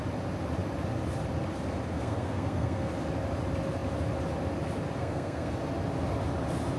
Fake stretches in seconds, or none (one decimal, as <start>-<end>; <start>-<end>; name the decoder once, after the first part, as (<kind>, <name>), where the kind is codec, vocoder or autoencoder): 1.9-2.9 (codec, SNAC); 5.0-5.5